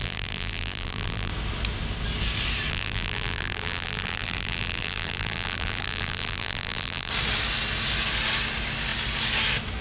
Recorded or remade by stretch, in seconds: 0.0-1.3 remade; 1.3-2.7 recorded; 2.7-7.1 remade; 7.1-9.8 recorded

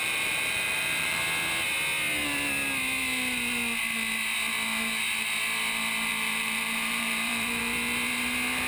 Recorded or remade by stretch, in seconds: 0.0-1.2 remade; 1.2-6.1 recorded; 6.1-7.6 remade; 7.6-8.7 recorded

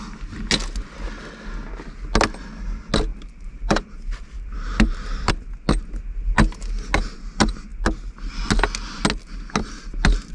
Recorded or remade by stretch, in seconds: 0.0-3.1 recorded; 3.1-5.3 remade; 5.3-10.3 recorded

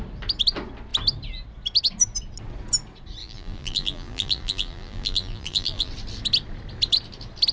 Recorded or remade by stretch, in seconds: 0.0-3.2 recorded; 3.2-5.9 remade; 5.9-7.5 recorded

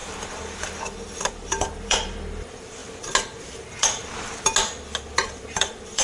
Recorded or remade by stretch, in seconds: 0.0-1.3 recorded; 1.3-2.8 remade; 2.8-3.4 recorded; 3.4-4.0 remade; 4.0-5.2 recorded; 5.2-6.0 remade